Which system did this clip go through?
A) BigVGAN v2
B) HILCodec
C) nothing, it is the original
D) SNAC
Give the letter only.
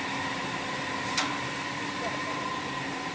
C